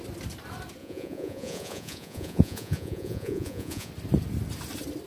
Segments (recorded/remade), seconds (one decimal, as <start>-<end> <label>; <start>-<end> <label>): 0.0-0.8 recorded; 0.8-3.9 remade; 3.9-5.1 recorded